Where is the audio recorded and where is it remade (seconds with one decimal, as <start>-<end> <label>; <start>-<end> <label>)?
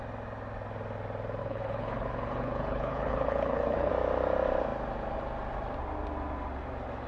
0.0-1.4 recorded; 1.4-3.9 remade; 3.9-7.1 recorded